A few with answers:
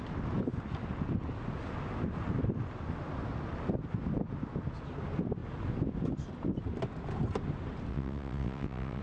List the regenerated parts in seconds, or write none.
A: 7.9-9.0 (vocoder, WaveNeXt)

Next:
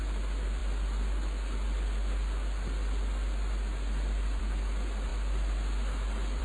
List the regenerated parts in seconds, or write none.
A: none